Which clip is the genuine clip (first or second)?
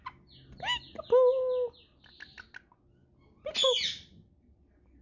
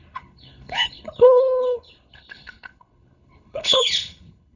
first